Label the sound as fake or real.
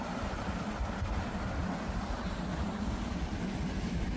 real